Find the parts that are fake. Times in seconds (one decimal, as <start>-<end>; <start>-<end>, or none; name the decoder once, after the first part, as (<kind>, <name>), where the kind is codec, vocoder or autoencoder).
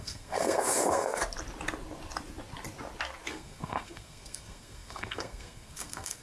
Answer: 0.0-1.2 (codec, SNAC); 3.3-6.2